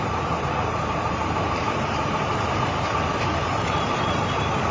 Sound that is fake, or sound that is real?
fake